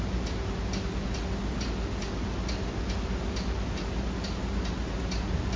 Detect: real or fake real